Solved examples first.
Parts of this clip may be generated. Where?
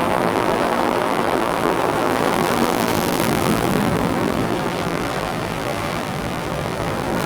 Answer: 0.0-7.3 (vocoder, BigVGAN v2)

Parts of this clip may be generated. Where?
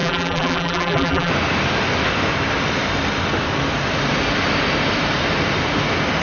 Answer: 0.0-1.3 (vocoder, BigVGAN v2)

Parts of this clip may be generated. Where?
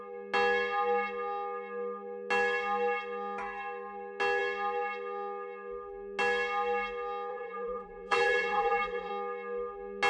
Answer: 7.3-9.1 (vocoder, BigVGAN v2)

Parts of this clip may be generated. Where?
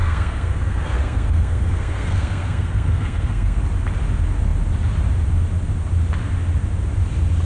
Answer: 0.0-3.6 (codec, SNAC)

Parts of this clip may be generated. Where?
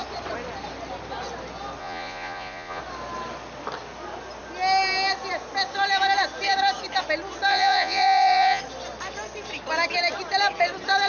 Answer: 1.8-2.8 (vocoder, Vocos); 7.5-8.6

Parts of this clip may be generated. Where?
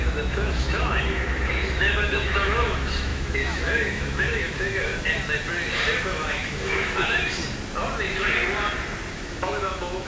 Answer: 0.0-4.9 (autoencoder, DAC-VAE); 6.0-7.4; 9.1-10.1